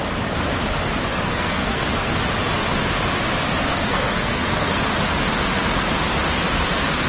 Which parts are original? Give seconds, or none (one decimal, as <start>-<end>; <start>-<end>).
0.0-1.1; 2.2-3.7; 4.8-7.1

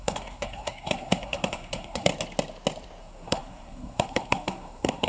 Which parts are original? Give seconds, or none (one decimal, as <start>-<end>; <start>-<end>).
2.1-3.0